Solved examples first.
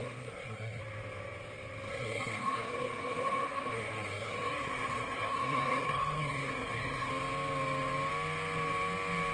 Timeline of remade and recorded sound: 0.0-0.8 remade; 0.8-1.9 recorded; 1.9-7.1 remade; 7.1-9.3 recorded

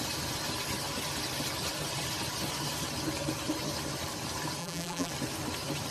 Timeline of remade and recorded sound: 0.0-4.6 recorded; 4.6-5.1 remade; 5.1-5.9 recorded

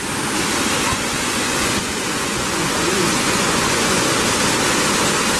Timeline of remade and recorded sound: 0.0-0.9 recorded; 0.9-4.1 remade; 4.1-5.4 recorded